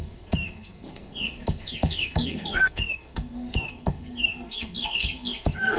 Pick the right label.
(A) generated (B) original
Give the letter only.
A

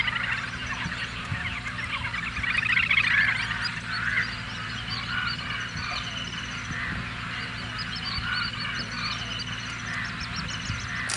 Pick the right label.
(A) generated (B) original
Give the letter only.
B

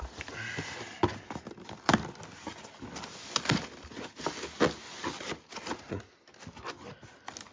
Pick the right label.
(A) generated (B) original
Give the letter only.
B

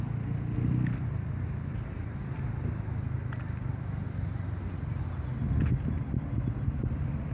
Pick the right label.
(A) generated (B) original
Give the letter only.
B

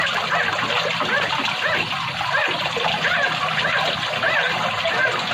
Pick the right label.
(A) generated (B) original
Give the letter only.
B